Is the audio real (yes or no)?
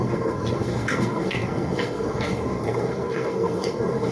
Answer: no